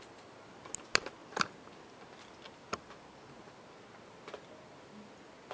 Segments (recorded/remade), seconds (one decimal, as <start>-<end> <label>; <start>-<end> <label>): 0.0-5.5 recorded